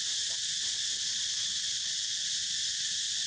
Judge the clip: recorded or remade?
remade